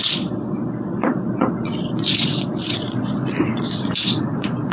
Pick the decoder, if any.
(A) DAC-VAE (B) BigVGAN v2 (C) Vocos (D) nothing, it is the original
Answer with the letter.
C